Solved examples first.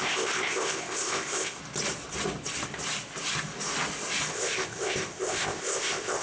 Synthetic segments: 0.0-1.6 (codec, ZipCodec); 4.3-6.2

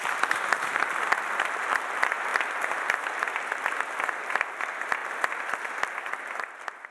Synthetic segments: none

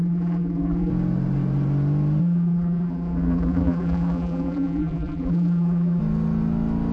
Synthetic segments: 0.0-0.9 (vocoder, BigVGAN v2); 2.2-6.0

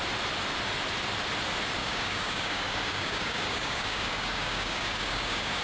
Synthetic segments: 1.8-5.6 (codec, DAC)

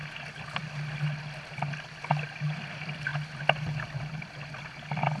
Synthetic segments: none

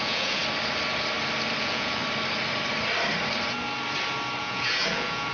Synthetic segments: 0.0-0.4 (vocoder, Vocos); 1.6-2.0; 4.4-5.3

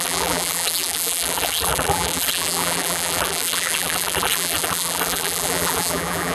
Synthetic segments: 0.0-6.3 (vocoder, BigVGAN v2)